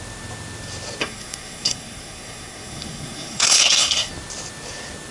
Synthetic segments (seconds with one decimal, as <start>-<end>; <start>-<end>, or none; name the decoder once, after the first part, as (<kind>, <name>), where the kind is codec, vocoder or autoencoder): 1.0-4.1 (codec, SNAC)